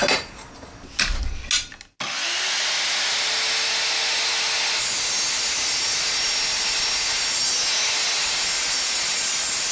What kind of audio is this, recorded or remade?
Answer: recorded